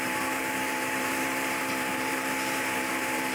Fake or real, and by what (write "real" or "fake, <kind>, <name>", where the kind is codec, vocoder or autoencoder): fake, vocoder, BigVGAN v2